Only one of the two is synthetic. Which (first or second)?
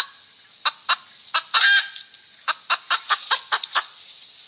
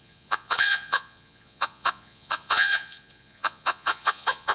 second